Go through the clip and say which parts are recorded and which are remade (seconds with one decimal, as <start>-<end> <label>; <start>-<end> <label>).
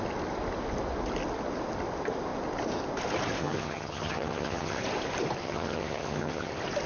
0.0-3.4 recorded; 3.4-4.8 remade; 4.8-5.4 recorded; 5.4-6.5 remade; 6.5-6.9 recorded